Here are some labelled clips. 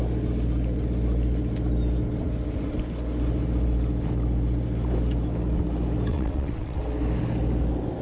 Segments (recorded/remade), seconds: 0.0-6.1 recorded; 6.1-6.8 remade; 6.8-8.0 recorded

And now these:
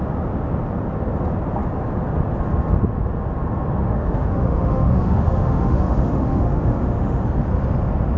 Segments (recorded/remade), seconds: 0.0-3.8 recorded; 3.8-7.2 remade; 7.2-8.2 recorded

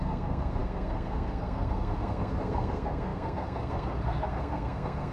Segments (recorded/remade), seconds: 0.0-5.1 remade